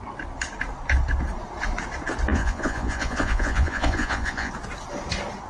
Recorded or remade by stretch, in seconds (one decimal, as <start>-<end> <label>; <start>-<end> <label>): 0.0-2.3 recorded; 2.3-4.5 remade; 4.5-5.5 recorded